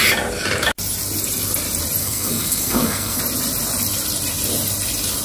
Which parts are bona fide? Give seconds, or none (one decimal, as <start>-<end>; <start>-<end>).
0.0-2.0; 3.2-5.2